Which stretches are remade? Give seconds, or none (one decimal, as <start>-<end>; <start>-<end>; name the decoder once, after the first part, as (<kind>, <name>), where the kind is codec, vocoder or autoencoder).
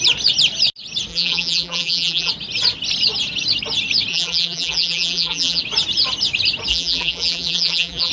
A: 1.1-2.3 (vocoder, BigVGAN v2); 4.1-5.6; 6.7-8.1